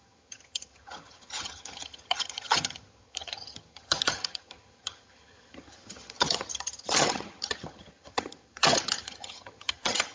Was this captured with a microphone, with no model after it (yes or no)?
no